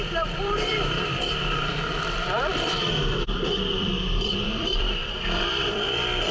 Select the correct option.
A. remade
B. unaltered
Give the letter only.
A